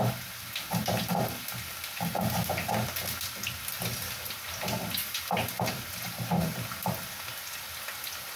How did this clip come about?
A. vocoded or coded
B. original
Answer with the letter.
B